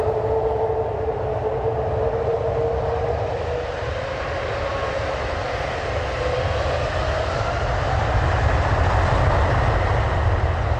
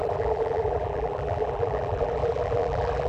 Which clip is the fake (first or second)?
second